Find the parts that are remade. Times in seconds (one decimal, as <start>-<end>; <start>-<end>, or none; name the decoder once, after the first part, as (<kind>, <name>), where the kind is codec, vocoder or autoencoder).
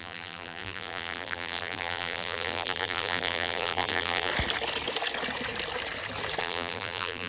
0.0-4.3 (vocoder, BigVGAN v2); 6.4-7.3